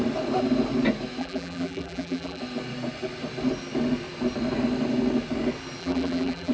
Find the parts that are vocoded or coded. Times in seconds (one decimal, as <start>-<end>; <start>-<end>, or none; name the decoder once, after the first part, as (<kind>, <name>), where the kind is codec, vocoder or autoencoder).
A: 1.2-2.4 (vocoder, BigVGAN v2); 5.8-6.5